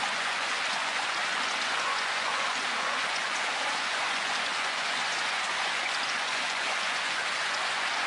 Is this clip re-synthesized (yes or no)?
yes